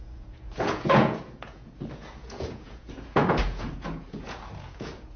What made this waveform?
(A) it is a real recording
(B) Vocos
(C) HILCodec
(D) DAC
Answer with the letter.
B